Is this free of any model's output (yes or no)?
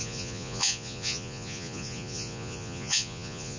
no